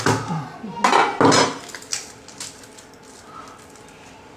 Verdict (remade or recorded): recorded